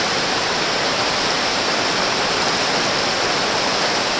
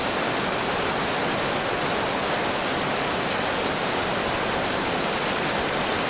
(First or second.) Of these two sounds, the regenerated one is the first